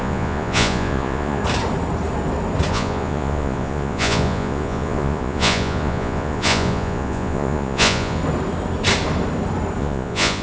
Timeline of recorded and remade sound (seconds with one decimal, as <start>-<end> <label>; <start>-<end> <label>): 0.0-1.4 remade; 1.4-2.7 recorded; 2.7-8.2 remade; 8.2-9.8 recorded; 9.8-10.4 remade